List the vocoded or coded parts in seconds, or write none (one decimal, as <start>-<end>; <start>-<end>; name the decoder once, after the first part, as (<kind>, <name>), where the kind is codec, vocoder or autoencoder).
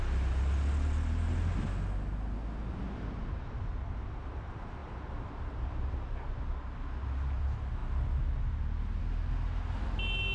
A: none